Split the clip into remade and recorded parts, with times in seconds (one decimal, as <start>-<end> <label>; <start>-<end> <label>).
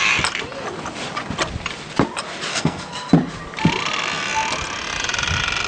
0.0-2.5 recorded; 2.5-3.1 remade; 3.1-5.7 recorded